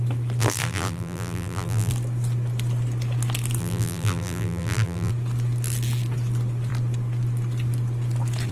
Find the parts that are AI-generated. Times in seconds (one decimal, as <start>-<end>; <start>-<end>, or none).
0.4-1.9; 3.6-5.1